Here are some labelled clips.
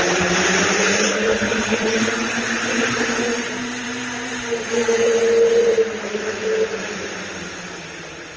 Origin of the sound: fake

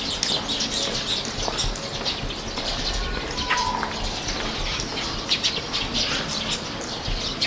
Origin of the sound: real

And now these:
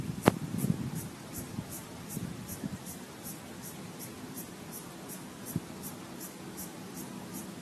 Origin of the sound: fake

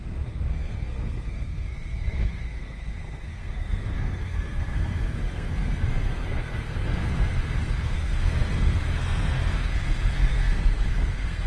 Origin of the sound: fake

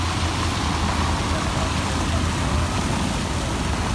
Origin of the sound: real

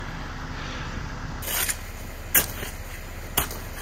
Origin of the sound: real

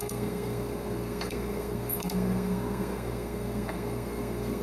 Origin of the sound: fake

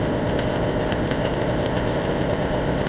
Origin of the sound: fake